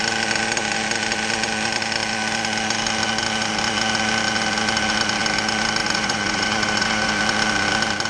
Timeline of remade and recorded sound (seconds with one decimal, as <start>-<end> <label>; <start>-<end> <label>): 0.0-5.8 recorded; 5.8-7.1 remade; 7.1-8.1 recorded